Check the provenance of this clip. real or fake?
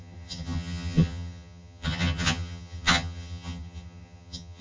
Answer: fake